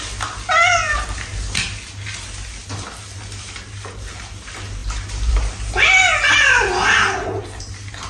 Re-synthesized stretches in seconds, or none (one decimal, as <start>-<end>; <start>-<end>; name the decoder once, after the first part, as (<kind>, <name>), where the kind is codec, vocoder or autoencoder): none